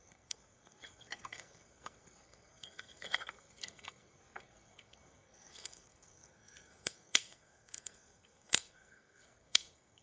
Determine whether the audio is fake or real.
fake